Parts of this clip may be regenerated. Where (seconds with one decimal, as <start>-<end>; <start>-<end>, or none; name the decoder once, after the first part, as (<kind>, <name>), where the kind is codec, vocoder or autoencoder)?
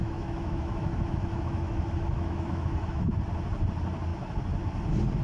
0.0-3.1 (autoencoder, DAC-VAE)